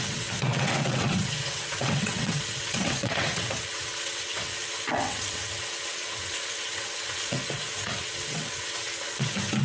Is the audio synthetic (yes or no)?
yes